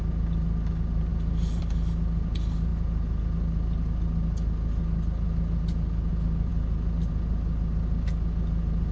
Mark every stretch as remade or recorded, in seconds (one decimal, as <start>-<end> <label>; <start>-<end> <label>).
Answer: 0.0-8.9 recorded